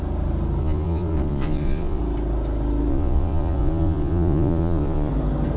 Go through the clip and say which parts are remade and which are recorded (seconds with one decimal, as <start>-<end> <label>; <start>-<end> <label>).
0.0-0.6 recorded; 0.6-2.0 remade; 2.0-2.9 recorded; 2.9-5.1 remade; 5.1-5.6 recorded